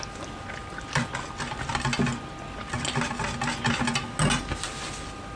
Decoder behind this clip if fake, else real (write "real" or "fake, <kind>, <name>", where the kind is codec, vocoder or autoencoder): real